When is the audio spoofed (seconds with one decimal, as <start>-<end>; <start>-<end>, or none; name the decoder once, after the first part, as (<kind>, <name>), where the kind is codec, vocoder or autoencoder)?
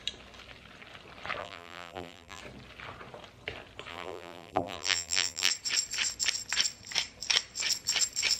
1.4-2.4 (vocoder, BigVGAN v2); 3.9-5.5